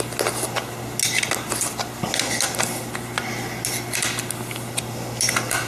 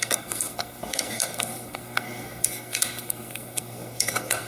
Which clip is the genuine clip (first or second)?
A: first